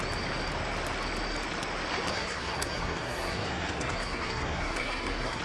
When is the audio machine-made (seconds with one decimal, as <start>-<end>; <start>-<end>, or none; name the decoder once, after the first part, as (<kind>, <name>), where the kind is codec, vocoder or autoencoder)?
2.1-5.4 (codec, SNAC)